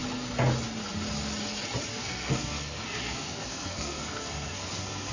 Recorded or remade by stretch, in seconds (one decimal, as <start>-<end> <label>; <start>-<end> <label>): 0.0-1.9 recorded; 1.9-5.1 remade